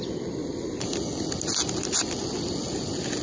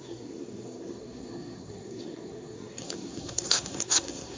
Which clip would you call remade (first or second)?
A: second